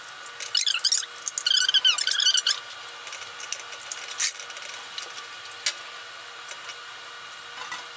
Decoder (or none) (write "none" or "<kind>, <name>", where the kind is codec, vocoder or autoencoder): none